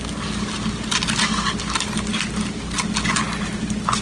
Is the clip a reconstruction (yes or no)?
no